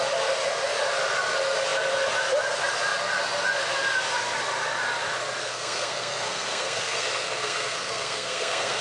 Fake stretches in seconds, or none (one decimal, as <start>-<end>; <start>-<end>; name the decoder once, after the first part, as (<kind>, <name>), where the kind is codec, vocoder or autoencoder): 5.4-8.8 (codec, SNAC)